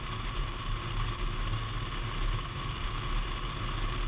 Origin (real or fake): real